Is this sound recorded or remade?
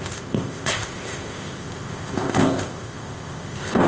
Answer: remade